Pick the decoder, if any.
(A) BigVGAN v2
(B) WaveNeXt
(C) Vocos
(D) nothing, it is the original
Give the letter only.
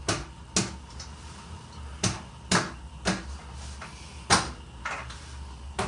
D